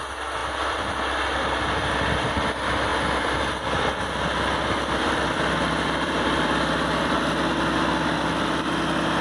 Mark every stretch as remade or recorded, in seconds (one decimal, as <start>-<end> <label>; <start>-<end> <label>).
0.0-0.4 recorded; 0.4-0.9 remade; 0.9-2.9 recorded; 2.9-7.2 remade; 7.2-9.2 recorded